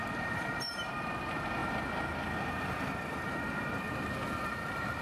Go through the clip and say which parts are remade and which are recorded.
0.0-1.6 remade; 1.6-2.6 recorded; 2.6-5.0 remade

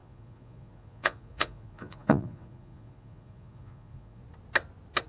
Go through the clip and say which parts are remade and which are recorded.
0.0-4.2 remade; 4.2-5.1 recorded

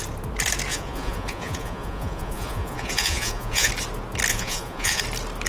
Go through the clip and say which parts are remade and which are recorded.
0.0-0.7 recorded; 0.7-3.7 remade; 3.7-4.3 recorded; 4.3-5.0 remade; 5.0-5.5 recorded

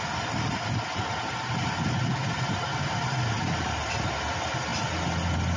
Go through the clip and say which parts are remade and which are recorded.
0.0-5.6 recorded

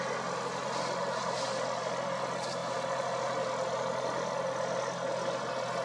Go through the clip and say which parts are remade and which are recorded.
0.0-2.6 recorded; 2.6-3.2 remade; 3.2-5.8 recorded